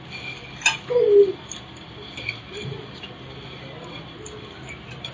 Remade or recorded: recorded